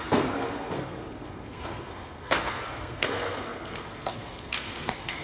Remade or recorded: remade